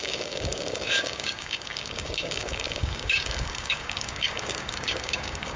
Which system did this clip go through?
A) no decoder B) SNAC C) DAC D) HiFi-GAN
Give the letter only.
C